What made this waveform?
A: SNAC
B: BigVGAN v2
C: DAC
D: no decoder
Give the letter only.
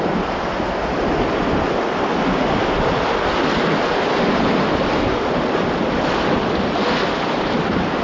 D